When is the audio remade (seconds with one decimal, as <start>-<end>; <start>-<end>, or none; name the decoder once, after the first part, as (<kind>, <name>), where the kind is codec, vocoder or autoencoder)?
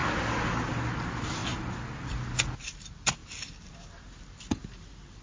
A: none